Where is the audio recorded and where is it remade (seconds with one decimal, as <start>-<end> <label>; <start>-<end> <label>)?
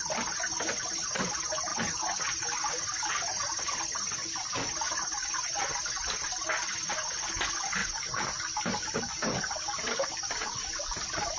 0.0-11.4 recorded